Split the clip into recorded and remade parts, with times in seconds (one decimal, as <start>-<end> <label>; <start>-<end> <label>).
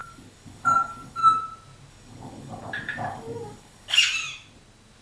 0.0-1.2 remade; 1.2-1.9 recorded; 1.9-4.2 remade; 4.2-5.0 recorded